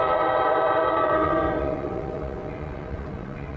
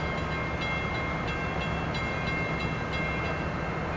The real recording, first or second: second